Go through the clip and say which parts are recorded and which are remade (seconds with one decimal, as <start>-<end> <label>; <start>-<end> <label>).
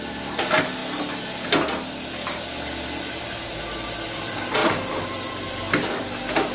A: 0.0-6.5 recorded